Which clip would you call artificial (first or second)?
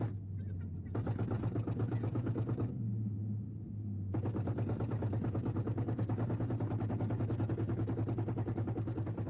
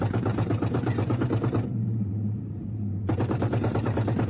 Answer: second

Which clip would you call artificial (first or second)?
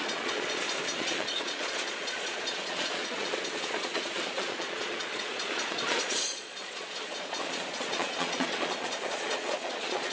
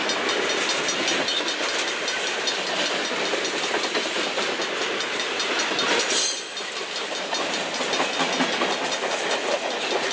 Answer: first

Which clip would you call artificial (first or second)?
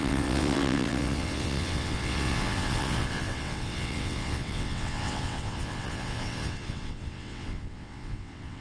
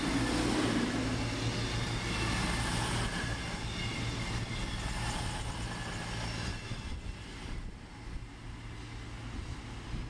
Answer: first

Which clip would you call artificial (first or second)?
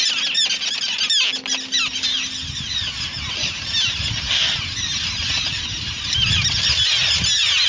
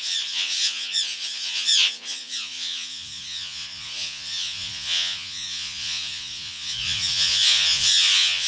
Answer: second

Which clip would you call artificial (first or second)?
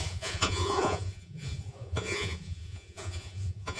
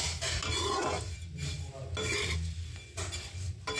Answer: first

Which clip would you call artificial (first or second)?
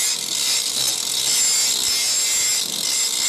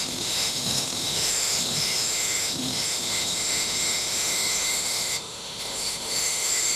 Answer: second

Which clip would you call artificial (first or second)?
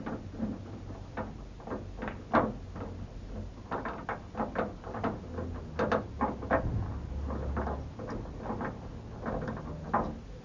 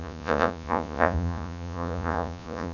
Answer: second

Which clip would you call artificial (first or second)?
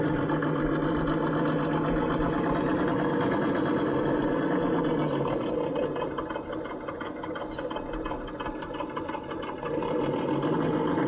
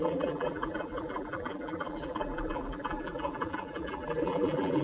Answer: second